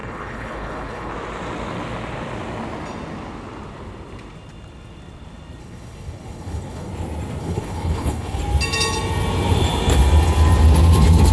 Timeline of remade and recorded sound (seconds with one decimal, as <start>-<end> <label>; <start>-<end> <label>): 0.0-1.1 remade; 1.1-5.6 recorded; 5.6-6.9 remade; 6.9-7.4 recorded; 7.4-8.4 remade; 8.4-11.3 recorded